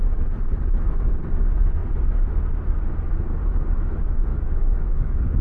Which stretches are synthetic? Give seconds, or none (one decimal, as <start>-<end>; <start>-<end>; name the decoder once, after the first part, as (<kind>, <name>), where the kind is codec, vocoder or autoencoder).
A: 4.3-5.4 (codec, DAC)